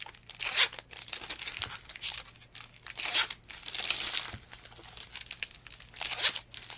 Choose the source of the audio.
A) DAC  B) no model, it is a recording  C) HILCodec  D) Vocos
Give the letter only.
B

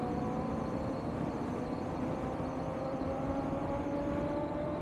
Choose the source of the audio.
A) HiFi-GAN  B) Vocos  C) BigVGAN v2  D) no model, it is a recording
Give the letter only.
C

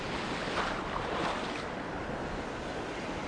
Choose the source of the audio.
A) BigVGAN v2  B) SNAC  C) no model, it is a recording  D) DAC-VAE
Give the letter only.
A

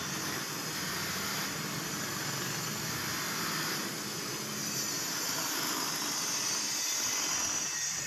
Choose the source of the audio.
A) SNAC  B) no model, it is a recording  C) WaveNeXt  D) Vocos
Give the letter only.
B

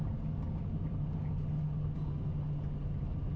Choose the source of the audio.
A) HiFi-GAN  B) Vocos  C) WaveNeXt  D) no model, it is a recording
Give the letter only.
D